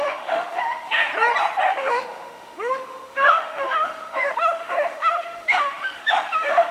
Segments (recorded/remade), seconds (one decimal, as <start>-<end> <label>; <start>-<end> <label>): 0.0-1.1 remade; 1.1-1.7 recorded; 1.7-6.7 remade